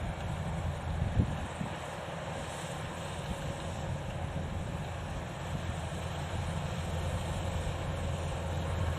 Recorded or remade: recorded